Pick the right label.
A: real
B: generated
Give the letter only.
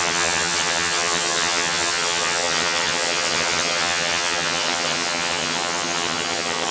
B